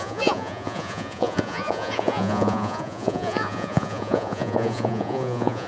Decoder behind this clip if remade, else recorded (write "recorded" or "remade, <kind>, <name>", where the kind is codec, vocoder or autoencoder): remade, vocoder, Vocos